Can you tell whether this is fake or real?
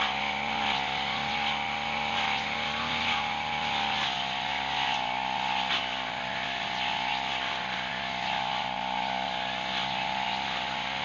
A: real